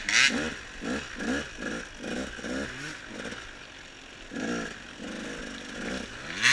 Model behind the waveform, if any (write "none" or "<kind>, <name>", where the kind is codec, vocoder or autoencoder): none